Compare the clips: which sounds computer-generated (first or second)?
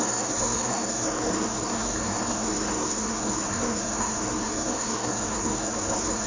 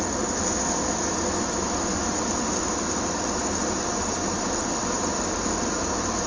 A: first